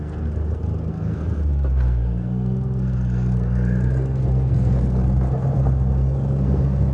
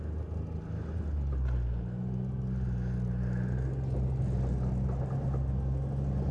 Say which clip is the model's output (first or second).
first